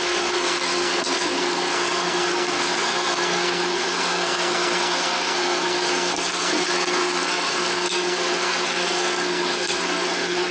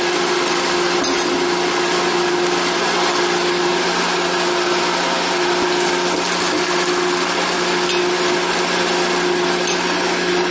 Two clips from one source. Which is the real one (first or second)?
second